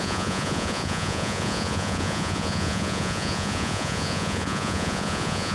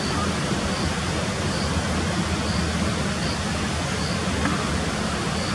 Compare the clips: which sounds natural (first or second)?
second